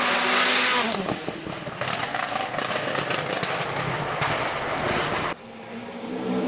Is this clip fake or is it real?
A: real